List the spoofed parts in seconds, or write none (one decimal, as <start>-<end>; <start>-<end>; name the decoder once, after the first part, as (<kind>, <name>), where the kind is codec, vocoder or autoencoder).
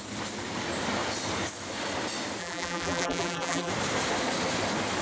2.4-3.7 (vocoder, BigVGAN v2)